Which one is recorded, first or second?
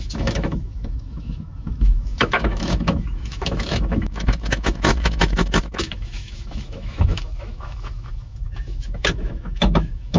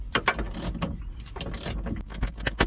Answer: second